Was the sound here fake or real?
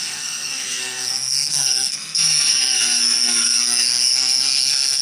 fake